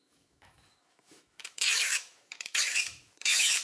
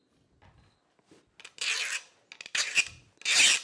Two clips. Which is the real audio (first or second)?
second